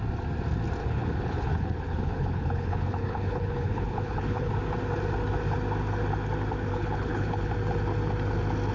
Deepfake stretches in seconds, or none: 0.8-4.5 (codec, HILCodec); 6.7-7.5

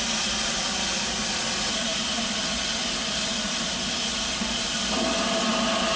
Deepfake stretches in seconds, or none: none

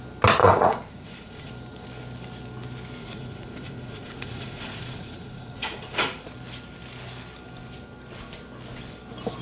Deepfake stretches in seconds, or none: 0.4-1.5 (vocoder, Vocos); 3.0-6.3

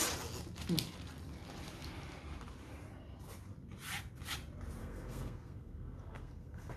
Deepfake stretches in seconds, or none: 4.8-6.8 (codec, SNAC)

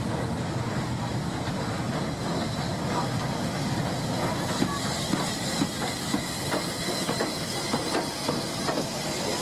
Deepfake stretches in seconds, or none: none

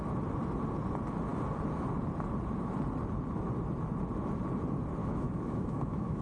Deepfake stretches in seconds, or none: 5.0-6.2 (autoencoder, DAC-VAE)